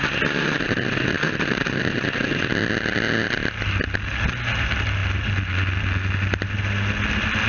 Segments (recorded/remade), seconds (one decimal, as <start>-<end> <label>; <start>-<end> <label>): 0.0-7.5 recorded